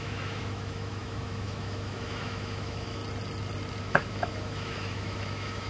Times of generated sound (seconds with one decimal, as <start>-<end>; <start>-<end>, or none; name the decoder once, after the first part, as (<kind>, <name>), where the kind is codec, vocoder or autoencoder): 0.0-3.0 (autoencoder, DAC-VAE); 3.8-5.7